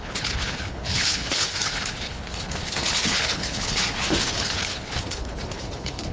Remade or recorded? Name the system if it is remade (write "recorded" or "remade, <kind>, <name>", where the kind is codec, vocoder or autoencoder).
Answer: remade, codec, HILCodec